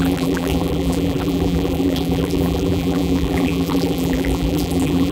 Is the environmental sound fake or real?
fake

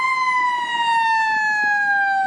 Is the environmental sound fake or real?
real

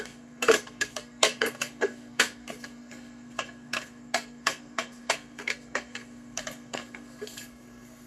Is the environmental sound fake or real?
fake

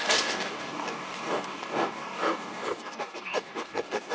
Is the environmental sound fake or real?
fake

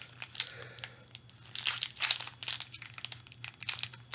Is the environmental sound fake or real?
real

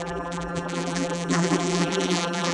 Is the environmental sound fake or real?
fake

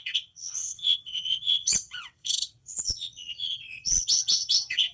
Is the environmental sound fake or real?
fake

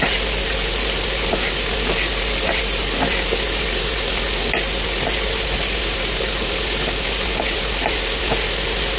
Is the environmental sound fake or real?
real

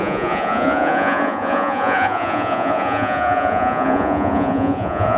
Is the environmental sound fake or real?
fake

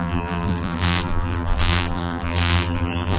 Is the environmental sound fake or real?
fake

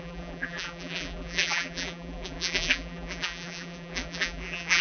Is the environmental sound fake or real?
fake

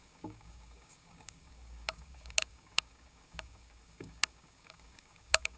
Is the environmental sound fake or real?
fake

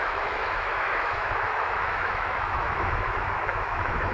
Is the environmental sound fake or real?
fake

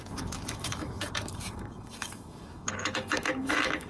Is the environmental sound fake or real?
fake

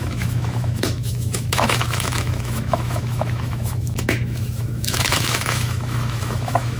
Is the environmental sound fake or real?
fake